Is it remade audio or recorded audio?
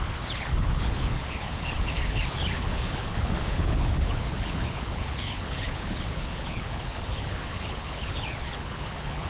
remade